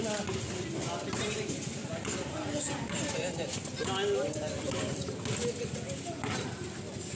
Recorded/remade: recorded